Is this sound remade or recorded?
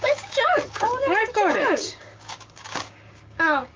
remade